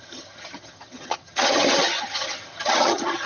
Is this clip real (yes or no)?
no